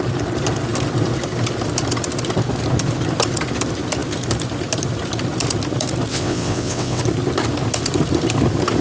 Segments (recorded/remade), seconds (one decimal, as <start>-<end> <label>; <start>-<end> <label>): 0.0-6.1 recorded; 6.1-7.0 remade; 7.0-8.8 recorded